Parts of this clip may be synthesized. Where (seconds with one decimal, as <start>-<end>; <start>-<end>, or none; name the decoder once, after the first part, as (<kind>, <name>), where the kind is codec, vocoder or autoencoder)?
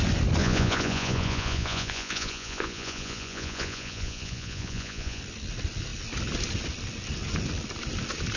0.4-5.2 (vocoder, Vocos)